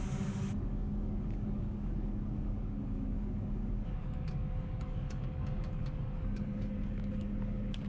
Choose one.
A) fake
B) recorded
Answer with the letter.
A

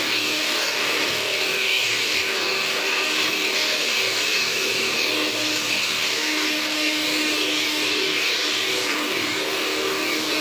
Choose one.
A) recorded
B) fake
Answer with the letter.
B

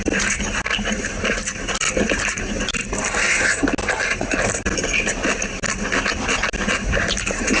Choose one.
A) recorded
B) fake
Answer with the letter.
A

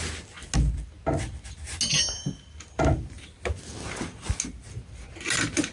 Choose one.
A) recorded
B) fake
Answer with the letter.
A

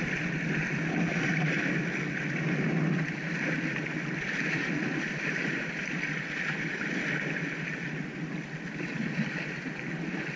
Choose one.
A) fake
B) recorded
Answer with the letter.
B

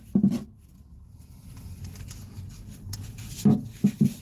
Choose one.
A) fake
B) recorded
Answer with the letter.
B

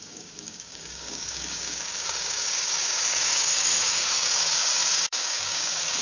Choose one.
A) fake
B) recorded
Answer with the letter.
A